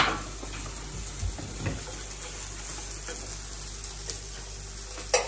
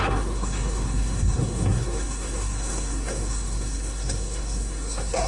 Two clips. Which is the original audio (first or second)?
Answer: first